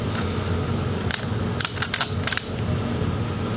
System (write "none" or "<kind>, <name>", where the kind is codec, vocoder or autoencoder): none